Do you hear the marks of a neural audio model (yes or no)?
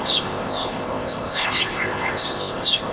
yes